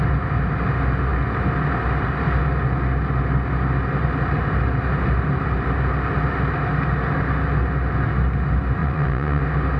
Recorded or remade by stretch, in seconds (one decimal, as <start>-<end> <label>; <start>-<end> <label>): 0.0-8.8 recorded; 8.8-9.4 remade; 9.4-9.8 recorded